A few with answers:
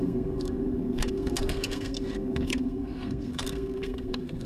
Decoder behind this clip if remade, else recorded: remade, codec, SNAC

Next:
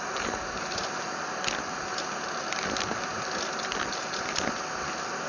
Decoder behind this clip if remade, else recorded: recorded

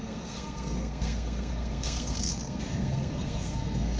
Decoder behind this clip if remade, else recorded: remade, codec, SNAC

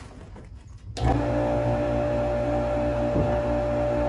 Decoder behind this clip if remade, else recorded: recorded